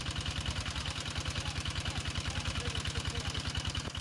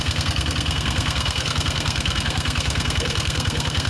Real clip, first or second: first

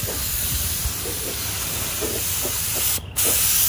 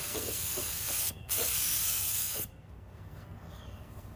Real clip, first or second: first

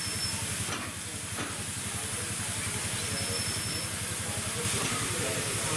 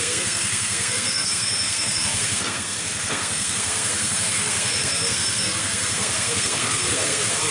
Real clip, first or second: first